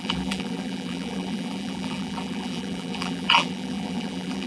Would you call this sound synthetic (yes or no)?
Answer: yes